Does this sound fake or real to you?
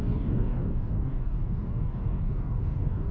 fake